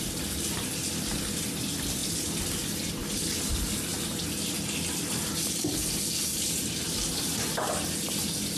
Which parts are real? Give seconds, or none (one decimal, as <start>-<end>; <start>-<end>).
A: 0.0-8.6